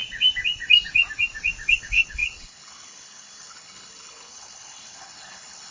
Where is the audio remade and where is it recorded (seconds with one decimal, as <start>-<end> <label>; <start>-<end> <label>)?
0.0-1.7 recorded; 1.7-5.7 remade